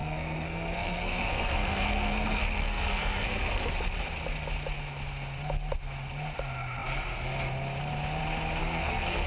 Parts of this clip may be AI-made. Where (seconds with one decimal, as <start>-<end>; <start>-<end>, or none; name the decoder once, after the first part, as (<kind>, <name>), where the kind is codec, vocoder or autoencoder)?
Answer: 0.0-3.7 (codec, SNAC); 8.6-9.3